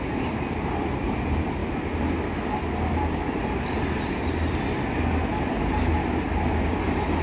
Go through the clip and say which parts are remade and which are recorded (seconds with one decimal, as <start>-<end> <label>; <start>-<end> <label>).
0.0-7.2 recorded